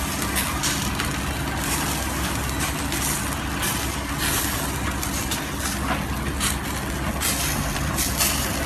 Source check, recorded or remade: recorded